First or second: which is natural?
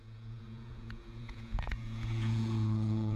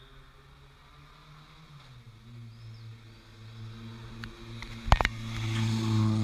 second